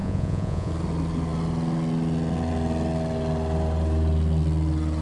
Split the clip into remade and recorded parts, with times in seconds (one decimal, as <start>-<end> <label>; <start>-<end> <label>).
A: 0.0-0.7 remade; 0.7-5.0 recorded